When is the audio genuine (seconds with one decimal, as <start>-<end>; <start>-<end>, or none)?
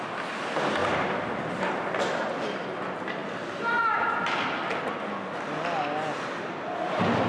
0.0-7.3